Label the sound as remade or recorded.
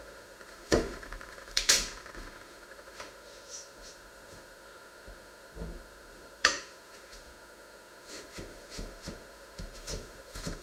remade